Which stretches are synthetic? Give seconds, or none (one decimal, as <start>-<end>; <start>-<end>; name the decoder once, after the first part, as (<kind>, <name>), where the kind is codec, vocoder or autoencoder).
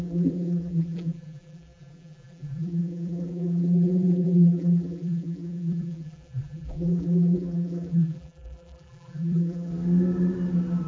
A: 0.0-9.7 (vocoder, BigVGAN v2)